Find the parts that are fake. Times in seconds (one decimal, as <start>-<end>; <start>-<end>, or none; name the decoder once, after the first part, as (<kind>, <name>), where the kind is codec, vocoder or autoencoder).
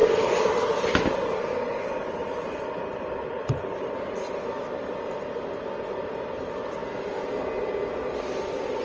none